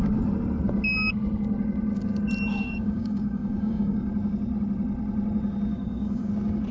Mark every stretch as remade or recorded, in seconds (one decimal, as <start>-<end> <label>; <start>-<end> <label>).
0.0-2.5 recorded; 2.5-4.1 remade; 4.1-5.7 recorded; 5.7-6.3 remade; 6.3-6.7 recorded